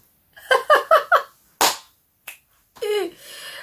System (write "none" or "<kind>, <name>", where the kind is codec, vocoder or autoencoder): none